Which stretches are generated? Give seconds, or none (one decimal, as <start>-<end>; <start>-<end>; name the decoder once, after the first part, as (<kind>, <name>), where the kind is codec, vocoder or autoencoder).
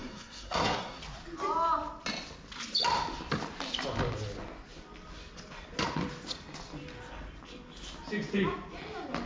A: 0.0-1.0 (codec, SNAC)